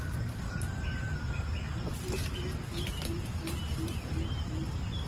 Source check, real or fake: real